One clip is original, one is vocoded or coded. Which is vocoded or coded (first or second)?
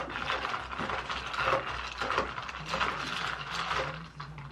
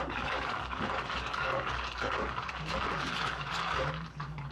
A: second